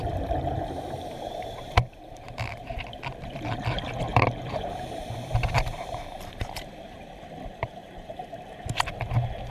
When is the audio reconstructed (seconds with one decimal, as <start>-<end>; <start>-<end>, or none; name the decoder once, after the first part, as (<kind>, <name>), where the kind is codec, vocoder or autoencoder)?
0.0-3.6 (vocoder, BigVGAN v2); 4.1-6.7; 7.8-8.6